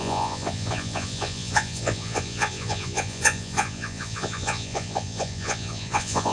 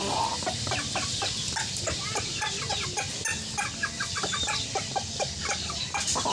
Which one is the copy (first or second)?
first